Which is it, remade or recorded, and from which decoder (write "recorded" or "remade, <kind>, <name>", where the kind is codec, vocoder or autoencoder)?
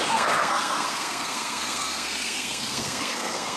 remade, codec, SNAC